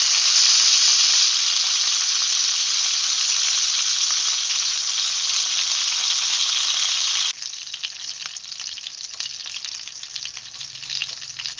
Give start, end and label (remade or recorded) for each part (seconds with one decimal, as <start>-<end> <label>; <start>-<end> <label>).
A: 0.0-11.6 recorded